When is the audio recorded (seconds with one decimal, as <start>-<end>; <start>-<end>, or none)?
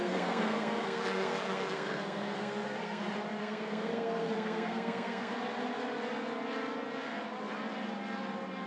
3.0-3.4; 5.3-8.7